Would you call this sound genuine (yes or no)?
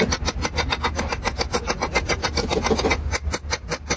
yes